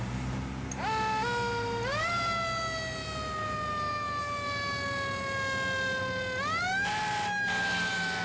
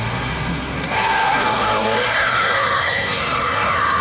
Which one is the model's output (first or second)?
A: second